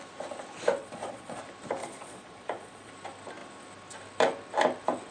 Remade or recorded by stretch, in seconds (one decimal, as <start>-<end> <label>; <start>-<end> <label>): 0.0-0.8 recorded; 0.8-1.4 remade; 1.4-1.8 recorded; 1.8-2.9 remade; 2.9-5.1 recorded